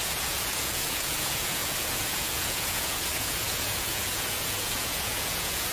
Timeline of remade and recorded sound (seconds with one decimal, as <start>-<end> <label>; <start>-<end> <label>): 0.0-5.7 remade